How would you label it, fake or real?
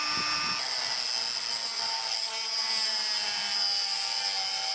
real